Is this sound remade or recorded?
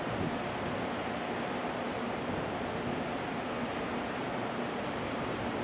recorded